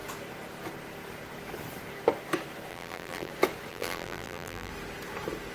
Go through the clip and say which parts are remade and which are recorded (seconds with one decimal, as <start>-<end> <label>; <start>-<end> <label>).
0.0-2.7 recorded; 2.7-3.3 remade; 3.3-3.7 recorded; 3.7-4.7 remade; 4.7-5.5 recorded